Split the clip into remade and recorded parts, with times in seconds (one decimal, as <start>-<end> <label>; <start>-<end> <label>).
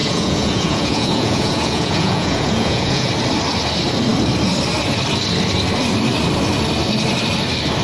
0.0-3.1 remade; 3.1-7.8 recorded